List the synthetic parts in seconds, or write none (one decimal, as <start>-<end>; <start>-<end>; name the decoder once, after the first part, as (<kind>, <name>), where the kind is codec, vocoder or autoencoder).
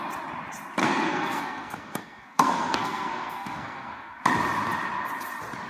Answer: 0.8-4.2 (codec, SNAC)